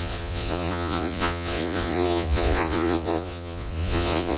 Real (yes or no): no